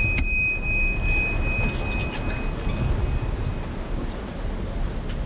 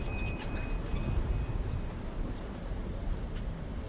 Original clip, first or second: first